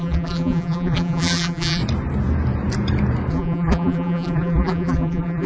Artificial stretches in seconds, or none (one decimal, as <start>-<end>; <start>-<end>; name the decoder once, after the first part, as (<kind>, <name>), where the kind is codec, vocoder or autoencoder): 0.0-1.8 (vocoder, BigVGAN v2); 3.3-5.5